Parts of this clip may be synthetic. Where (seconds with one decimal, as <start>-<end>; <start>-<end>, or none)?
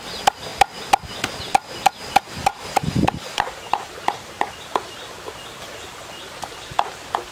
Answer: 2.4-3.9